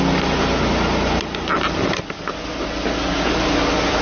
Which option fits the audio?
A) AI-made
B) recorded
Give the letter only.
B